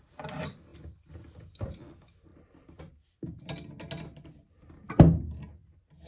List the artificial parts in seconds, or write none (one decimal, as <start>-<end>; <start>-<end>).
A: none